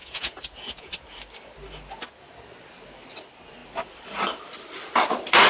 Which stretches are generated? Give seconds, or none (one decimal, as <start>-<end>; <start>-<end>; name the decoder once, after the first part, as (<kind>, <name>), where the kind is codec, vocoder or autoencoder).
0.0-0.9 (vocoder, Vocos)